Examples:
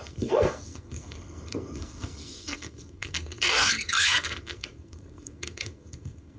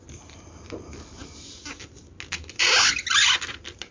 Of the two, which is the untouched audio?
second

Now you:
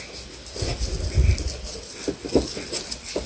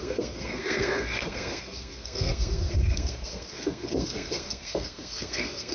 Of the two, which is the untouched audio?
first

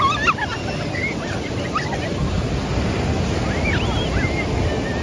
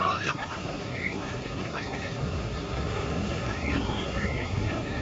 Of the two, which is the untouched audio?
first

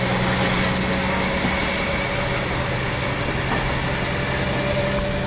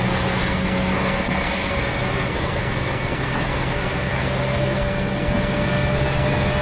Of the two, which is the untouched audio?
first